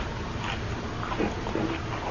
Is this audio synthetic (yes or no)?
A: no